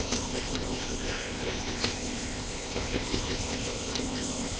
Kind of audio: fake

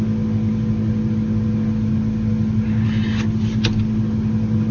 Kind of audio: real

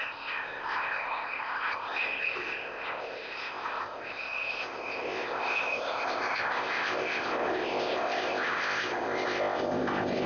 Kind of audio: fake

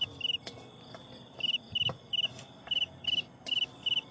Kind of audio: real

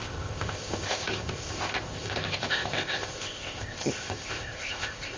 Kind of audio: fake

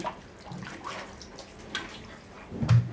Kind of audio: real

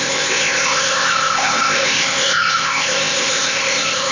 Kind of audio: fake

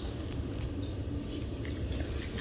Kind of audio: real